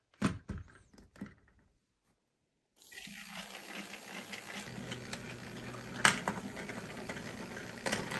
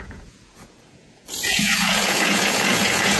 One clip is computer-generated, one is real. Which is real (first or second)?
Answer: first